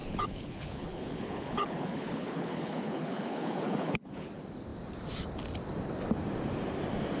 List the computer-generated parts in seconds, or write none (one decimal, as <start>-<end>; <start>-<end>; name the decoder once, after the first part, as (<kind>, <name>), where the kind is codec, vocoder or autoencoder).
0.0-4.3 (codec, HILCodec)